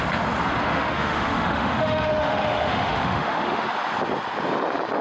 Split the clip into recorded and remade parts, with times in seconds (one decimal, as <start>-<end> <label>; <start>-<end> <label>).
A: 0.0-0.7 recorded; 0.7-3.7 remade; 3.7-5.0 recorded